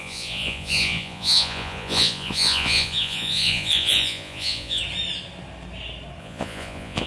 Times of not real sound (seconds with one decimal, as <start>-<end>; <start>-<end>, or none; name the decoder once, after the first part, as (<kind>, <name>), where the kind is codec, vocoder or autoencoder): 0.0-4.8 (vocoder, Vocos); 6.2-7.1